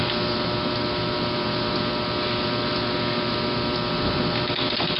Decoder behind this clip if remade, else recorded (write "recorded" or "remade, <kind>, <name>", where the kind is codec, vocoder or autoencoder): recorded